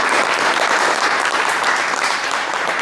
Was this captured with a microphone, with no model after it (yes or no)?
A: no